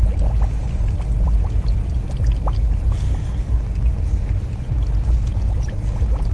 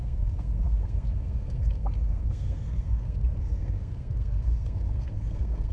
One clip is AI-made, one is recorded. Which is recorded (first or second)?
first